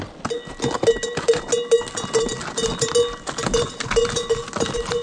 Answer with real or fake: real